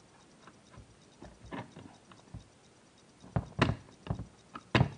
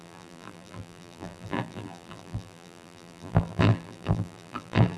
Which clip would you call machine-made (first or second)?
second